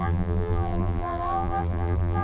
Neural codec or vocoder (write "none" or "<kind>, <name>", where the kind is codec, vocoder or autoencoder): vocoder, BigVGAN v2